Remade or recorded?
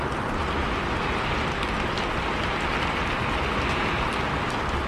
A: recorded